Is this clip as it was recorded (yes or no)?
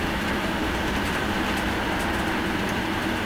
yes